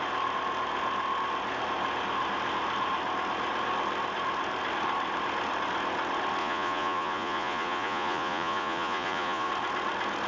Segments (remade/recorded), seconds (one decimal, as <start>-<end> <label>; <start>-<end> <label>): 0.0-6.4 recorded; 6.4-9.5 remade; 9.5-10.3 recorded